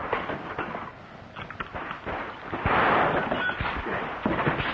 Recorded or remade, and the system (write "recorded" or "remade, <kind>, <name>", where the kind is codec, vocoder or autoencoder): recorded